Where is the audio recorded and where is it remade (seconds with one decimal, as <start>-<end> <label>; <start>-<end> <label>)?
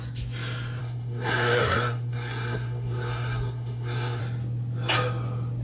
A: 0.0-0.8 recorded; 0.8-4.2 remade; 4.2-5.6 recorded